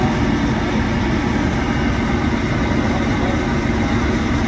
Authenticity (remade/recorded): recorded